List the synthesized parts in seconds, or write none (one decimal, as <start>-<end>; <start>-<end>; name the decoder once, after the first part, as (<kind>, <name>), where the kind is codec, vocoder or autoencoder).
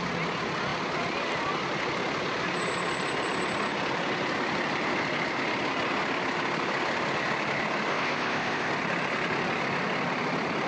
7.9-8.7 (codec, ZipCodec)